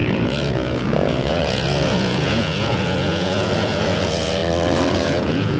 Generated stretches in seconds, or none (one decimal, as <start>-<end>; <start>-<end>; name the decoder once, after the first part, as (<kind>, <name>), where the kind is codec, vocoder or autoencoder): 0.0-4.4 (vocoder, Vocos); 4.9-5.6